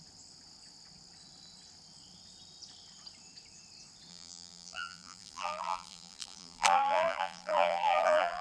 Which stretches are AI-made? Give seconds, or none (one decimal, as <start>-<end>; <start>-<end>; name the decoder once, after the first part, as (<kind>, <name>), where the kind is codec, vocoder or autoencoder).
4.1-8.4 (vocoder, BigVGAN v2)